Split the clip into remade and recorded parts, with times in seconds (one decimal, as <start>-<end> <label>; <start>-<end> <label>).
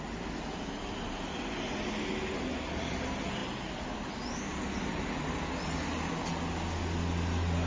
0.0-7.7 recorded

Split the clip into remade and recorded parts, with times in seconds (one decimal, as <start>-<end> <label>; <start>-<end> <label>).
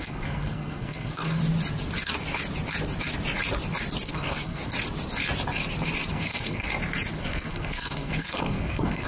0.0-1.4 remade; 1.4-4.1 recorded; 4.1-4.6 remade; 4.6-6.1 recorded; 6.1-6.7 remade; 6.7-7.2 recorded; 7.2-9.1 remade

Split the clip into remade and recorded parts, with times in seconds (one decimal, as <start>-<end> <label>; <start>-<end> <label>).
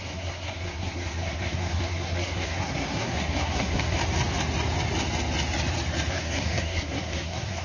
0.0-4.0 remade; 4.0-6.1 recorded; 6.1-7.6 remade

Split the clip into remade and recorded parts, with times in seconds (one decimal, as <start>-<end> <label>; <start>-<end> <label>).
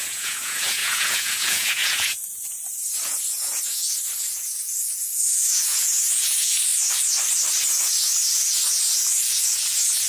0.0-6.7 remade; 6.7-7.7 recorded; 7.7-10.1 remade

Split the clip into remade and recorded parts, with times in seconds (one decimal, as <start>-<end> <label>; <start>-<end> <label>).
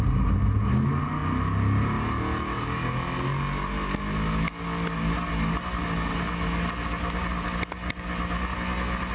0.0-9.1 recorded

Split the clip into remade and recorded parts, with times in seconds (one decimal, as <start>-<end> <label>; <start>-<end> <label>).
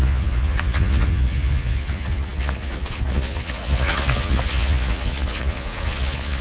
0.0-6.4 remade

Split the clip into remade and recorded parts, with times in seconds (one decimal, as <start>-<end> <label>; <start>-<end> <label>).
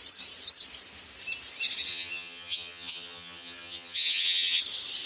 0.0-1.9 recorded; 1.9-4.6 remade; 4.6-5.1 recorded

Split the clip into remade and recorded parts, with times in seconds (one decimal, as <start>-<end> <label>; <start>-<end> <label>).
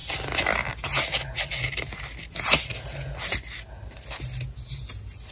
0.0-5.3 recorded